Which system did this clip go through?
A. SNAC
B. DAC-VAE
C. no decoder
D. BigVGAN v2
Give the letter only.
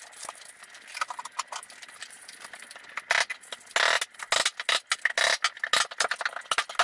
C